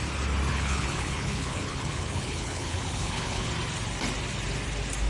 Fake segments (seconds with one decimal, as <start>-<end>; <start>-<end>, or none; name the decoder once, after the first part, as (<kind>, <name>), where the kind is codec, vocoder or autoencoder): 0.5-3.5 (codec, HILCodec)